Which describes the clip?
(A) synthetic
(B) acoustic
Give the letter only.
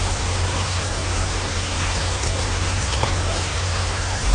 A